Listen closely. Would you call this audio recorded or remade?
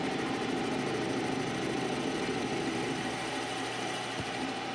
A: recorded